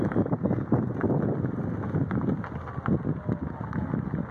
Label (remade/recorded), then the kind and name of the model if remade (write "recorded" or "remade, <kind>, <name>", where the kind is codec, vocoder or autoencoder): recorded